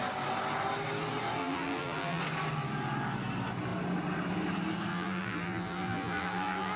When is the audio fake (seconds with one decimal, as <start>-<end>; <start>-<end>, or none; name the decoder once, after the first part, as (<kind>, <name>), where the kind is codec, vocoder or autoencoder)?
1.4-2.2 (vocoder, BigVGAN v2); 4.9-6.8

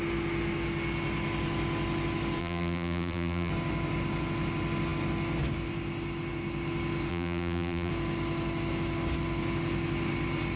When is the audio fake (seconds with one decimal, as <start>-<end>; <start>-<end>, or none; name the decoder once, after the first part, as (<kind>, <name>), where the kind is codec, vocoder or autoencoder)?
2.4-3.5 (vocoder, BigVGAN v2); 7.1-7.9

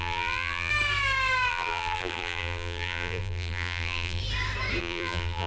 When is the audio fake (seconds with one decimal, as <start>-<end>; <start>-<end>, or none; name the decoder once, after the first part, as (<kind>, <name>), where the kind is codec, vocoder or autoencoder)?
0.0-0.7 (vocoder, BigVGAN v2); 1.5-4.2; 4.8-5.5

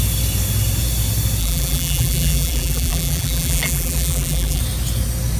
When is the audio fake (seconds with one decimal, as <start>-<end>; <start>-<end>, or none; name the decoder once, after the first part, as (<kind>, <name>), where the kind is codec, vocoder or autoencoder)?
1.4-4.6 (vocoder, BigVGAN v2)

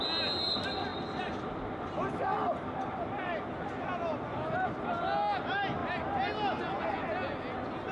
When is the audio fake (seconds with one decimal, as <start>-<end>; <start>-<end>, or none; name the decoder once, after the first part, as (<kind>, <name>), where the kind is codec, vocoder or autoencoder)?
none

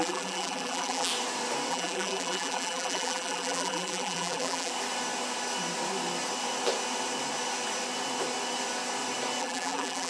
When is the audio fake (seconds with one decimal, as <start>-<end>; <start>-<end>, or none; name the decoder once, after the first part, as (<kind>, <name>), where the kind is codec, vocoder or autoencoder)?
0.0-1.1 (vocoder, BigVGAN v2); 1.7-4.7; 9.4-10.1

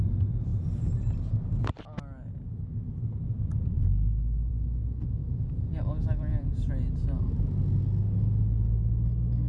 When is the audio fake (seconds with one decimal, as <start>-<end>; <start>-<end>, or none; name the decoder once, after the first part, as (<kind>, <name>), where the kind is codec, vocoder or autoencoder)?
0.5-1.0 (vocoder, BigVGAN v2); 5.2-6.7